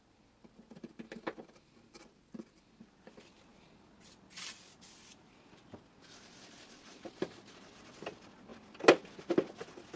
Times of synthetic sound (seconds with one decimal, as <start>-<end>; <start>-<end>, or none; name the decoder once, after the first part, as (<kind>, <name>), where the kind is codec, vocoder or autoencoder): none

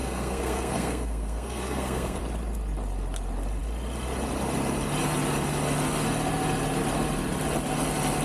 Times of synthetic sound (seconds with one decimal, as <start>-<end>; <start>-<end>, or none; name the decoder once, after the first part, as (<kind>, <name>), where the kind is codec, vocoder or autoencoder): 0.0-2.2 (codec, SNAC)

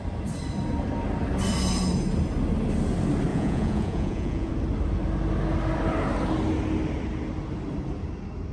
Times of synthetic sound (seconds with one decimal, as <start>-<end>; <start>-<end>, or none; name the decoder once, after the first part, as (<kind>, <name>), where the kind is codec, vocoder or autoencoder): 3.3-4.5 (vocoder, Vocos)